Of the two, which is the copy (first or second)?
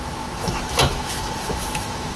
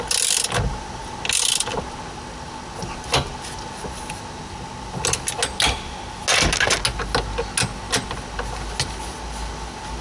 first